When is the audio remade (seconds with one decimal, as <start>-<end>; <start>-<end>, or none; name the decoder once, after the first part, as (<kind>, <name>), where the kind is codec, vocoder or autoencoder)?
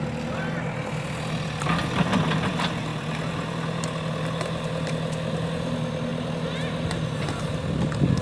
none